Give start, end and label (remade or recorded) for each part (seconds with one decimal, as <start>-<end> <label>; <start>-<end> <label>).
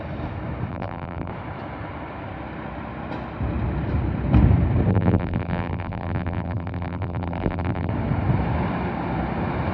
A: 0.0-0.7 recorded; 0.7-1.3 remade; 1.3-4.9 recorded; 4.9-7.9 remade; 7.9-9.7 recorded